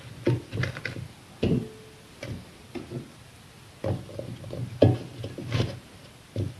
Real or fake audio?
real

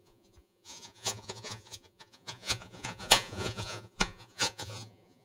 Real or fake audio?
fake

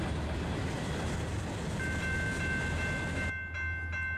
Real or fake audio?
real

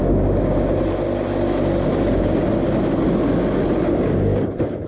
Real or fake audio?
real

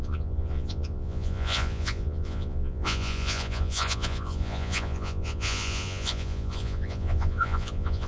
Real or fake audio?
fake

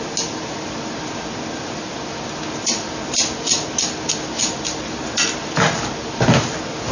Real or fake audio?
real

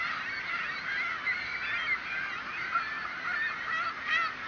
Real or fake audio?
real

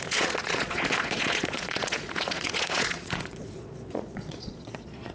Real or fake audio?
fake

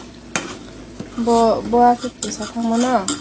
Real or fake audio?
real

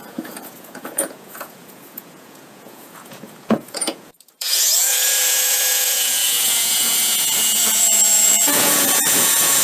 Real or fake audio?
fake